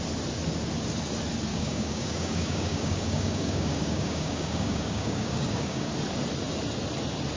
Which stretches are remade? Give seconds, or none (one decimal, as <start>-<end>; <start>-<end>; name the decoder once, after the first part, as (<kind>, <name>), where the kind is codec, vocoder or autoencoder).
1.5-5.9 (codec, DAC)